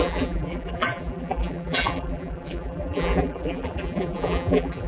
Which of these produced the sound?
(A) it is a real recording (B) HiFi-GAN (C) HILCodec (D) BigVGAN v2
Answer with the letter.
D